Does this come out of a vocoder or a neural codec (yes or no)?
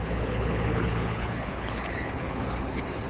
yes